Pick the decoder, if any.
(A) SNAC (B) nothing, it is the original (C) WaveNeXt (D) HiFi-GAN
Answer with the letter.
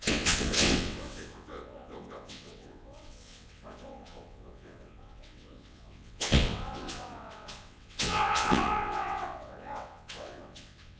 C